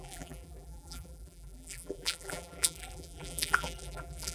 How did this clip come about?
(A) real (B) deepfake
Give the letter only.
B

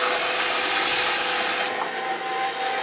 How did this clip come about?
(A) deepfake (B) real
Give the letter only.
B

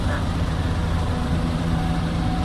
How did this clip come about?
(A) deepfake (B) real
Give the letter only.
A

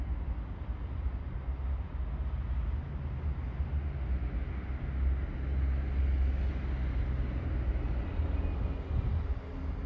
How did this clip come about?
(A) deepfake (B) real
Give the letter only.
B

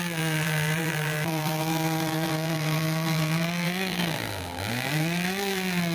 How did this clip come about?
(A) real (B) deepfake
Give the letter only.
B